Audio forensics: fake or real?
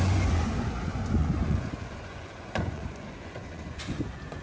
fake